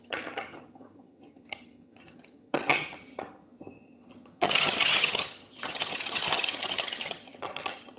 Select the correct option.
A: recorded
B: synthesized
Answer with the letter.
B